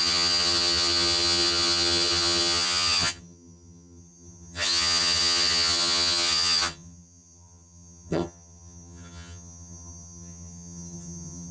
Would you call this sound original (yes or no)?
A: no